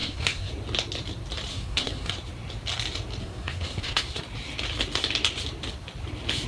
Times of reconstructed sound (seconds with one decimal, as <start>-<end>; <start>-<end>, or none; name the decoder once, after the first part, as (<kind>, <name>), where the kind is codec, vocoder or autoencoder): 0.0-0.5 (codec, SNAC); 1.5-2.1; 3.2-4.2